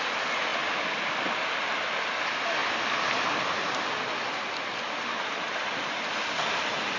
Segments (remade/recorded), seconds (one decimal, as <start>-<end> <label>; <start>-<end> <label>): 0.0-7.0 recorded